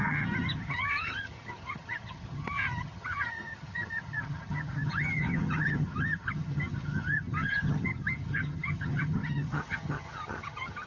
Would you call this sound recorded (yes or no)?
no